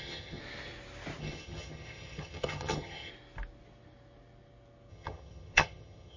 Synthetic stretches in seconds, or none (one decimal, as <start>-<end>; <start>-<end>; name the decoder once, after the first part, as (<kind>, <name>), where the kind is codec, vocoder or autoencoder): 0.0-0.4 (vocoder, HiFi-GAN); 1.2-3.1; 4.9-6.2